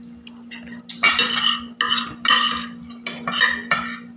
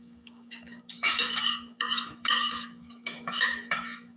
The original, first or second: first